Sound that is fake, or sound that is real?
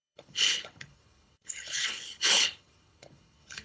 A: fake